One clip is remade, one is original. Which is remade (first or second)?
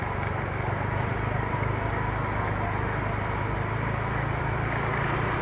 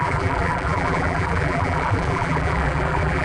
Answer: second